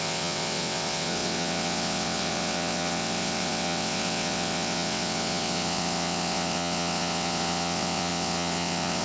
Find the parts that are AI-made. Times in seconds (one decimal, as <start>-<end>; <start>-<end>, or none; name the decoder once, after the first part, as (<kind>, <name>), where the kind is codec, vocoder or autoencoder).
0.0-9.0 (vocoder, WaveNeXt)